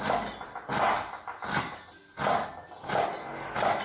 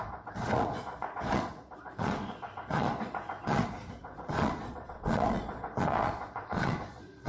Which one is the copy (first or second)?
second